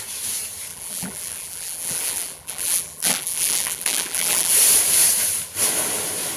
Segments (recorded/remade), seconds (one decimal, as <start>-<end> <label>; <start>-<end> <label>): 0.0-0.7 recorded; 0.7-4.5 remade; 4.5-6.4 recorded